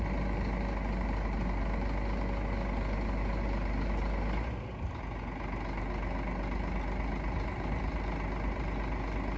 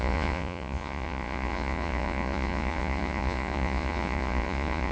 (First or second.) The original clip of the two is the first